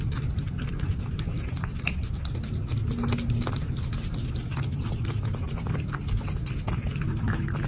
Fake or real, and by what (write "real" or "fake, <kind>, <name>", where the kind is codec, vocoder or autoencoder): real